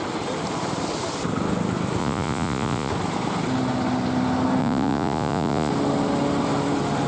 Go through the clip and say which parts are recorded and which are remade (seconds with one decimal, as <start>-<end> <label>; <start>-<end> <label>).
0.0-2.0 recorded; 2.0-2.9 remade; 2.9-4.6 recorded; 4.6-5.7 remade; 5.7-7.1 recorded